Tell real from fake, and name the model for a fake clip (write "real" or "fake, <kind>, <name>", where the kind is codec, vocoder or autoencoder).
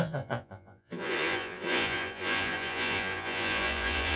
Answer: fake, vocoder, Vocos